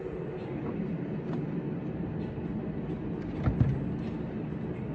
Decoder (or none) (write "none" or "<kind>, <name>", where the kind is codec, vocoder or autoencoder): none